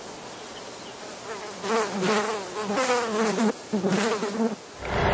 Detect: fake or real real